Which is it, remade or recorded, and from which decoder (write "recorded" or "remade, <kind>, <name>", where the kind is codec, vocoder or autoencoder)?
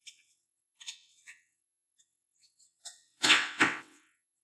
remade, vocoder, WaveNeXt